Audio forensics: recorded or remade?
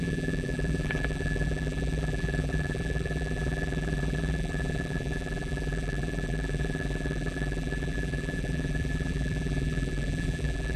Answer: remade